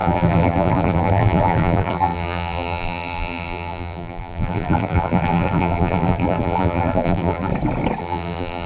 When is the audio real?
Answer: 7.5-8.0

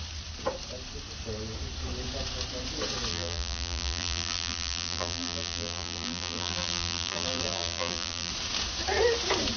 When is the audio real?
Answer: 0.0-3.1; 8.3-9.6

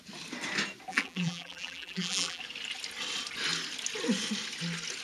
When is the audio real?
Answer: 0.0-0.9; 2.4-5.0

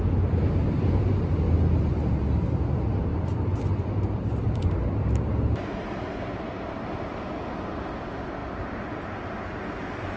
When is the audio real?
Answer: 0.0-10.2